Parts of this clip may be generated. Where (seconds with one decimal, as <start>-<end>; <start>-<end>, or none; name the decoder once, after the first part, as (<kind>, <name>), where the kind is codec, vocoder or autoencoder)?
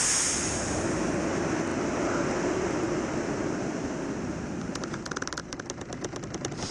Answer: none